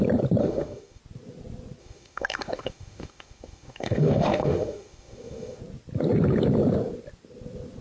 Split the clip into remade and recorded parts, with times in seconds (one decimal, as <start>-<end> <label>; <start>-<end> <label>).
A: 0.0-0.4 recorded; 0.4-1.0 remade; 1.0-1.8 recorded; 1.8-5.6 remade; 5.6-7.8 recorded